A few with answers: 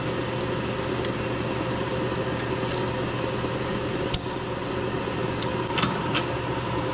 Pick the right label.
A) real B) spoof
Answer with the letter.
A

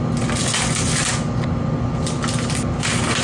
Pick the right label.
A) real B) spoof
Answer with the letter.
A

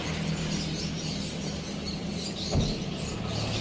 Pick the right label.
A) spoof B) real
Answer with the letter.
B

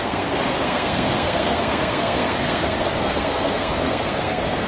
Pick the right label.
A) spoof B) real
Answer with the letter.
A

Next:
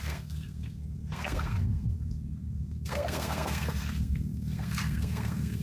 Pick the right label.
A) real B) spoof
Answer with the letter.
B